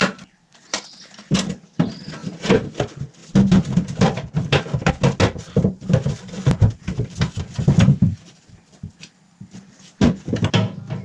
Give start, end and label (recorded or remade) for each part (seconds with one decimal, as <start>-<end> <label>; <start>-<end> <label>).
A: 0.0-0.5 remade; 0.5-2.2 recorded; 2.2-2.7 remade; 2.7-8.0 recorded; 8.0-9.0 remade; 9.0-11.0 recorded